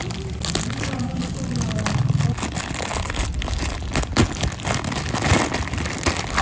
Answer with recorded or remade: recorded